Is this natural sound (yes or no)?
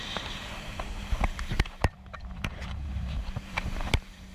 no